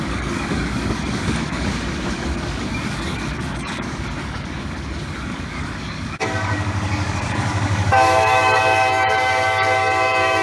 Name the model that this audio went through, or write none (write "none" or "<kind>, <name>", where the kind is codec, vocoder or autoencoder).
codec, DAC